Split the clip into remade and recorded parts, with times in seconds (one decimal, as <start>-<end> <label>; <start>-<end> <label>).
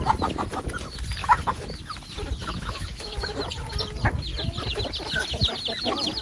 0.0-1.2 recorded; 1.2-1.8 remade; 1.8-2.4 recorded; 2.4-3.4 remade; 3.4-6.2 recorded